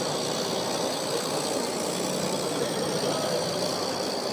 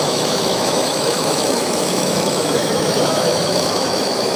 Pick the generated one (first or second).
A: second